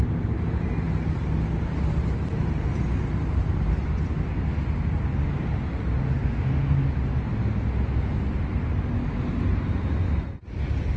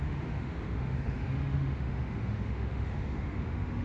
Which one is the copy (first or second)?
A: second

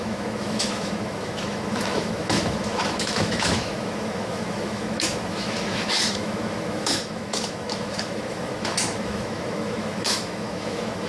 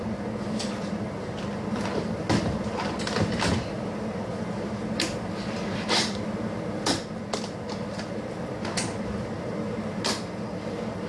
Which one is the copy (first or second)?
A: first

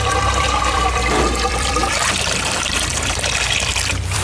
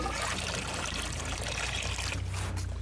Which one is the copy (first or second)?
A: first